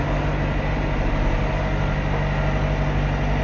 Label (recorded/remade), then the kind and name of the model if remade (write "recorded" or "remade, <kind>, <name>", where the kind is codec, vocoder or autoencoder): recorded